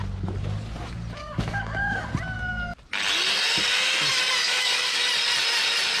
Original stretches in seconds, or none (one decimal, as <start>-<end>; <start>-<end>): 0.0-1.2; 2.1-4.4; 5.0-6.0